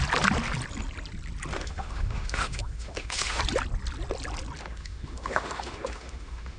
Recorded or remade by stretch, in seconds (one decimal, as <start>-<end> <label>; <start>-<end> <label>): 0.0-1.5 recorded; 1.5-3.4 remade; 3.4-4.6 recorded; 4.6-6.6 remade